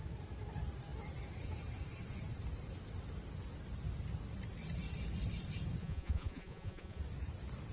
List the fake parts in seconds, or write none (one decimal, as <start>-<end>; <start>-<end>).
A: 5.8-7.0